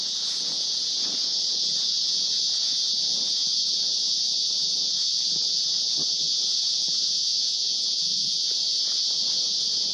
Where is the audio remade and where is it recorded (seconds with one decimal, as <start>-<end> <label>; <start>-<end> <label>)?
0.0-9.9 remade